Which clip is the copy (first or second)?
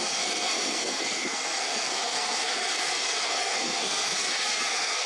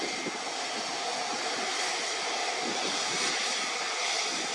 first